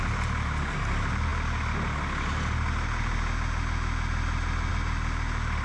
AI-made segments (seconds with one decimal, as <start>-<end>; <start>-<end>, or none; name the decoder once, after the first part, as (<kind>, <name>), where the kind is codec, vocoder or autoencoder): none